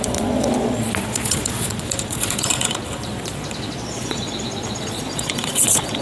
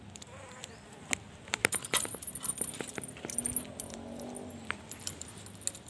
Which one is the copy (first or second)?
first